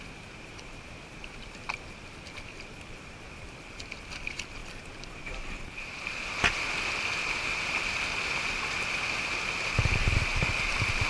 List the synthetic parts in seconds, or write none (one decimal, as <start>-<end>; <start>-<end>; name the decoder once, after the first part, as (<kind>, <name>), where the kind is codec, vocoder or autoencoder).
0.0-4.6 (vocoder, BigVGAN v2); 5.2-11.1